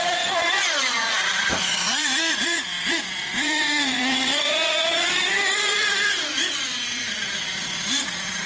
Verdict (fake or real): fake